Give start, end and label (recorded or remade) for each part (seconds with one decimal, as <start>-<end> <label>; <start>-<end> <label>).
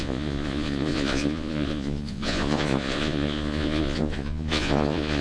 0.0-5.2 remade